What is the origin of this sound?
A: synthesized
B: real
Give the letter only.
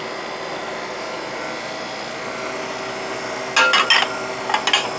B